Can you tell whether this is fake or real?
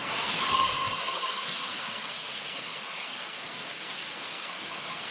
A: fake